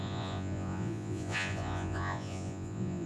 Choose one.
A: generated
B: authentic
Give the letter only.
A